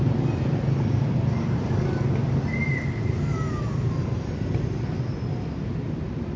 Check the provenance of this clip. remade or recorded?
recorded